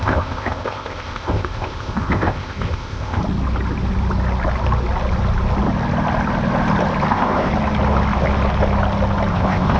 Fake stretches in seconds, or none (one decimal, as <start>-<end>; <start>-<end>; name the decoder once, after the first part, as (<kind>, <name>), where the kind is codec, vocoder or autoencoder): 0.0-3.2 (codec, ZipCodec); 7.1-7.5; 9.3-9.8